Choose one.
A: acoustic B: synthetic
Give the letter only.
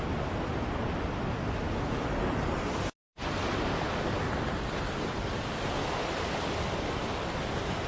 A